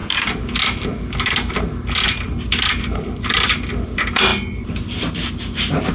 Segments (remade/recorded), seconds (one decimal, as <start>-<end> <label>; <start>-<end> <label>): 0.0-5.9 recorded